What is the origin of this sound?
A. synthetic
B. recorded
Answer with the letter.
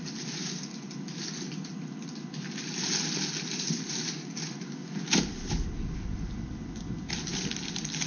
B